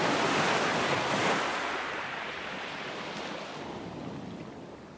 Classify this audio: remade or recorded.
recorded